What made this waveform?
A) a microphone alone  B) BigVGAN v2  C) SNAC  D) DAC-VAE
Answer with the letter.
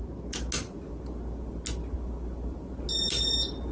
A